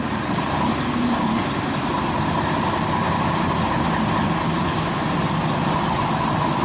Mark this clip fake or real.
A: real